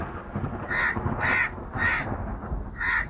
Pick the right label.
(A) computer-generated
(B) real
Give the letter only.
B